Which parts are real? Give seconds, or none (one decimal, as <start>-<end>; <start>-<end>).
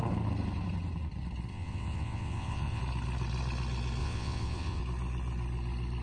0.0-1.5; 2.8-4.0; 4.8-6.0